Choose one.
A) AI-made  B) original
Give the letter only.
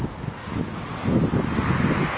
B